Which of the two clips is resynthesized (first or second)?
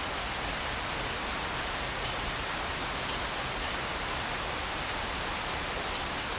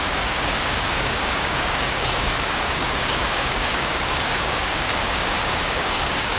second